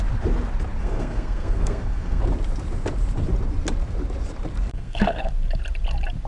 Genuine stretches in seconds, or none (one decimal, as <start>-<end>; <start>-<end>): 0.0-0.8; 2.2-4.7; 5.3-6.3